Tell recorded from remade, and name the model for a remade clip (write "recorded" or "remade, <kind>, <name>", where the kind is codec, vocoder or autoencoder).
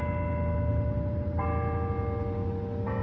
recorded